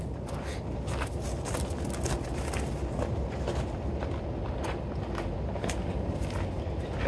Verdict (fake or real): real